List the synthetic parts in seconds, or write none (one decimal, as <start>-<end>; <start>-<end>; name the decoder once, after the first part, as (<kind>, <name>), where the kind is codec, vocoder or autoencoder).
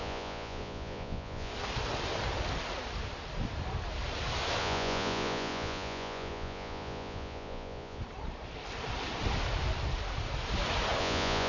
0.0-1.5 (vocoder, Vocos); 4.6-8.0; 11.0-11.5